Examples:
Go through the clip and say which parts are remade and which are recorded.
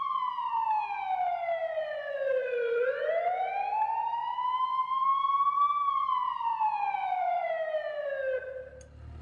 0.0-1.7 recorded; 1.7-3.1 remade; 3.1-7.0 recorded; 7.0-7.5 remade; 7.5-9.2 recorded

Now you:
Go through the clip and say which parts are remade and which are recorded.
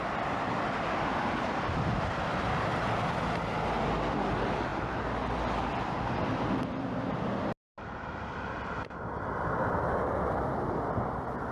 0.0-11.5 recorded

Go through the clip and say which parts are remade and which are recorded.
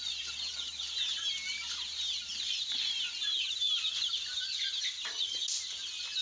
0.0-6.2 recorded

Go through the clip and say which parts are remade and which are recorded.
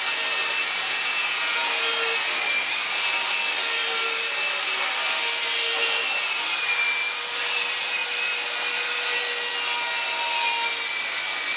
0.0-0.6 recorded; 0.6-1.7 remade; 1.7-11.6 recorded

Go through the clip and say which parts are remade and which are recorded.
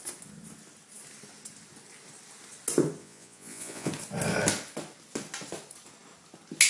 0.0-3.0 recorded; 3.0-3.9 remade; 3.9-6.7 recorded